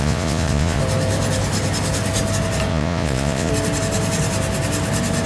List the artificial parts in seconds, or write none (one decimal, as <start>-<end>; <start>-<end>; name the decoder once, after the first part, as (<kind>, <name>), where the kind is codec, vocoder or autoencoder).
0.0-0.8 (vocoder, Vocos); 2.7-3.5

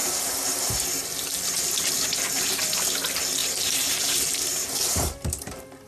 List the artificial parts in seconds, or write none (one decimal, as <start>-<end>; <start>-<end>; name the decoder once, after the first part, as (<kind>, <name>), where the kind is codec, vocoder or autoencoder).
0.0-0.7 (vocoder, BigVGAN v2); 3.4-5.9

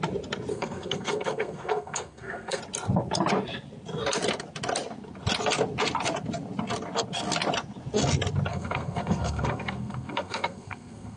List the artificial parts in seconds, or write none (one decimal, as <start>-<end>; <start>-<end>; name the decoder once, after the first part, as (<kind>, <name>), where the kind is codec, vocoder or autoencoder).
0.5-2.6 (codec, SNAC); 8.5-11.2

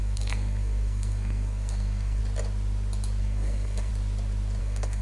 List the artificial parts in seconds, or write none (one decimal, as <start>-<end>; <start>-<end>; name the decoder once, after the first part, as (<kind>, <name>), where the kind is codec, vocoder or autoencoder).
0.0-2.2 (codec, SNAC); 3.2-3.9; 4.6-5.0

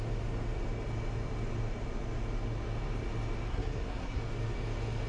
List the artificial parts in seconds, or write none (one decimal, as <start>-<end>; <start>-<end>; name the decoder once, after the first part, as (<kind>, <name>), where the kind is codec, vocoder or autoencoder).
3.5-4.2 (codec, SNAC)

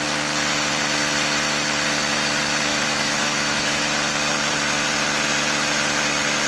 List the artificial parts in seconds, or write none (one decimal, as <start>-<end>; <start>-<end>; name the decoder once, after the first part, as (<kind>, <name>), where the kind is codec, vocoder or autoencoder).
2.7-3.8 (autoencoder, DAC-VAE)